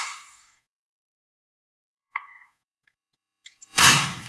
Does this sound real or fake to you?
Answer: fake